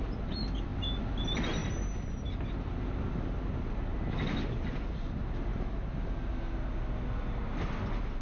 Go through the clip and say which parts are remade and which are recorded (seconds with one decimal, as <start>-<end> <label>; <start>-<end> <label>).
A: 0.0-8.2 recorded